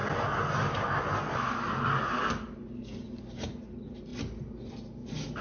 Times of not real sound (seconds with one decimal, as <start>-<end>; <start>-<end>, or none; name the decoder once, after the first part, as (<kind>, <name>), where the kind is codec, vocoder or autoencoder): none